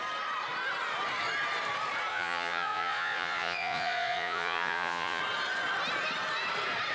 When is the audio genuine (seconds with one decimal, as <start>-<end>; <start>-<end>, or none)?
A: 0.0-2.1; 5.2-6.9